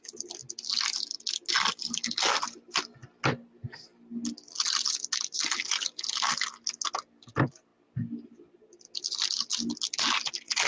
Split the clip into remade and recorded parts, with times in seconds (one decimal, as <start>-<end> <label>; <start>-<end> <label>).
0.0-10.7 recorded